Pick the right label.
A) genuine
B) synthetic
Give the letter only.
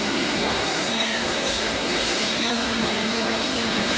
B